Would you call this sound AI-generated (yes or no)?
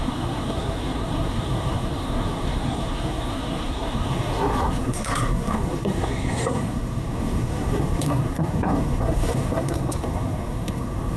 yes